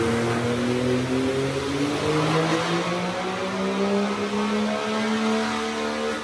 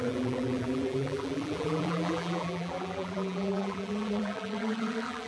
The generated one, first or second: second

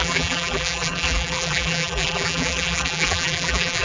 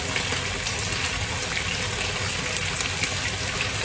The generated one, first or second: first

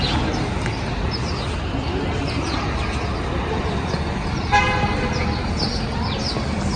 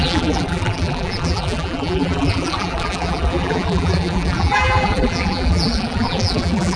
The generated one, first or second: second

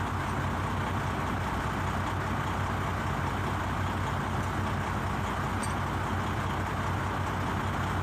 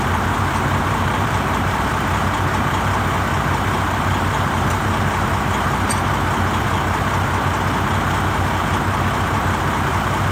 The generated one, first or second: second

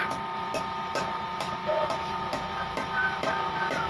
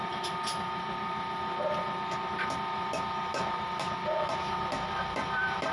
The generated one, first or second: first